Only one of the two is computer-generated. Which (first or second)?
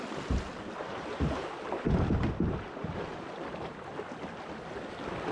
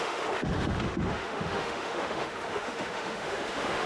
second